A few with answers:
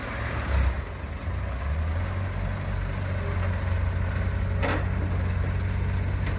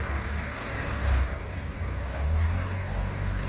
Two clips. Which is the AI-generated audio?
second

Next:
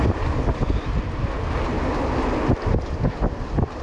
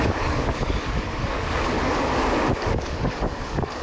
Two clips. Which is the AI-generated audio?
second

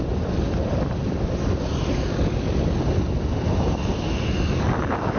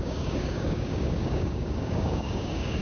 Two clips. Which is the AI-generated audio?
second